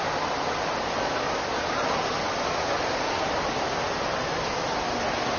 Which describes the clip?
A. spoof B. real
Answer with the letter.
B